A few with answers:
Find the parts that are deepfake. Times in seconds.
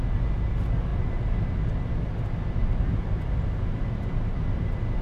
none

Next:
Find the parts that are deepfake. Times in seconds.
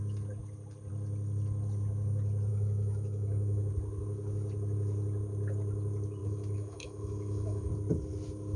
2.5-3.7 (autoencoder, DAC-VAE); 6.2-7.7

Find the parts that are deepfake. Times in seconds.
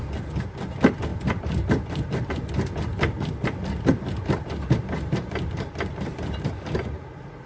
1.1-2.3 (vocoder, BigVGAN v2)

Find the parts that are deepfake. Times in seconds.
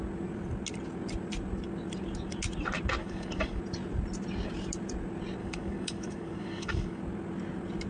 3.0-3.6 (codec, DAC); 5.4-7.0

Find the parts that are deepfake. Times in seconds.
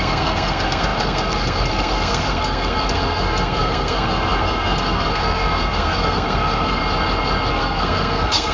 0.0-6.8 (codec, SNAC); 7.5-8.5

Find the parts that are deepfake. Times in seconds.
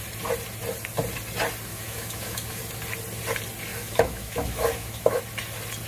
1.7-2.6 (autoencoder, DAC-VAE); 3.7-5.2